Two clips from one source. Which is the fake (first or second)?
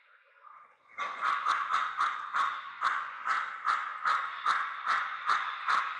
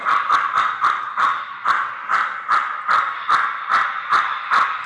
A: first